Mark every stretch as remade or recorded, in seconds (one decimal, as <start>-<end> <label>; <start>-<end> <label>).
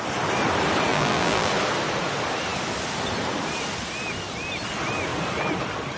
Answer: 0.0-0.9 recorded; 0.9-1.5 remade; 1.5-6.0 recorded